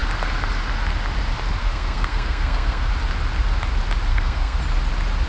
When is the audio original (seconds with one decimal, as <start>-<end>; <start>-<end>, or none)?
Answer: 0.0-1.6; 2.9-4.1; 4.6-5.3